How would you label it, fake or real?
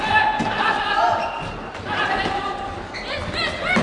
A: real